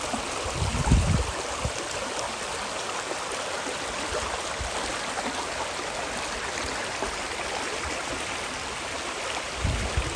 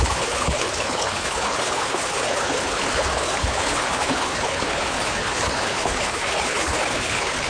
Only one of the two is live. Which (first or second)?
first